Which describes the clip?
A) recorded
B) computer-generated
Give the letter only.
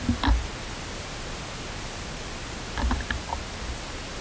A